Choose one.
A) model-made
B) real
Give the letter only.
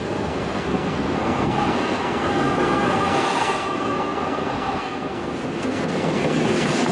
A